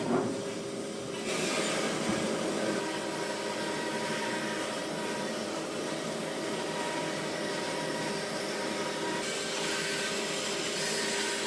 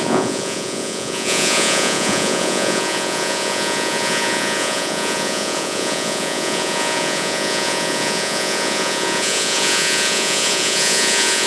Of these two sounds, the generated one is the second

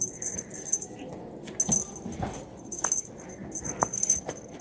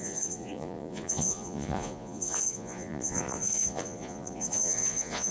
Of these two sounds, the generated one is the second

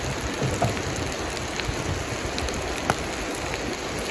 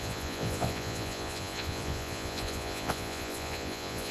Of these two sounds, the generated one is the second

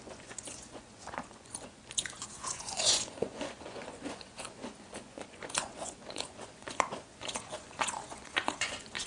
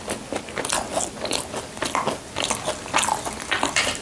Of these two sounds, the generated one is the first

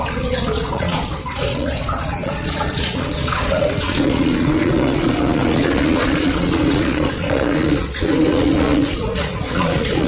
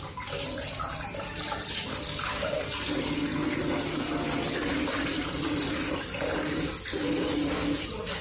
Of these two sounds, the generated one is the first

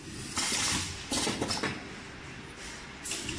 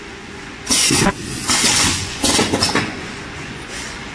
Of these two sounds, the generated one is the second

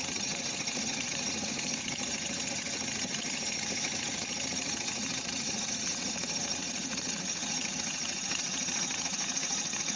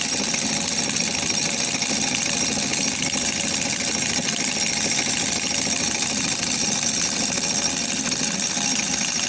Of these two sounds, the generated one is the first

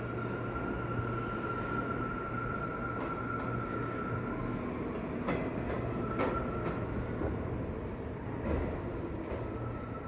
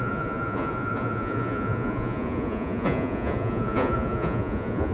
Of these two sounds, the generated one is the second